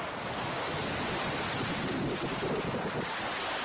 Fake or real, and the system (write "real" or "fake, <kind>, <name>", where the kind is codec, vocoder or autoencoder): real